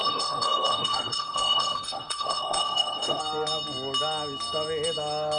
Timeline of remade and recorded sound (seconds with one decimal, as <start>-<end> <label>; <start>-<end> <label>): 0.0-3.2 remade; 3.2-5.4 recorded